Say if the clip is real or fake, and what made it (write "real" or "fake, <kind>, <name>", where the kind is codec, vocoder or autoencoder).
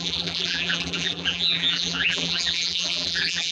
fake, vocoder, BigVGAN v2